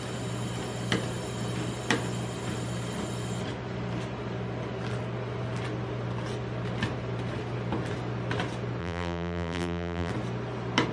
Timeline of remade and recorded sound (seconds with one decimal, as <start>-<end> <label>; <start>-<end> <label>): 0.0-8.8 recorded; 8.8-10.1 remade; 10.1-10.9 recorded